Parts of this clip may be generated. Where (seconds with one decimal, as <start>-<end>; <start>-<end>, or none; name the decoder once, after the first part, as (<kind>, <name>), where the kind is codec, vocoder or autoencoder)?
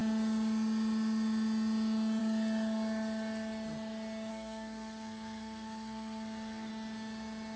4.3-6.7 (codec, SNAC)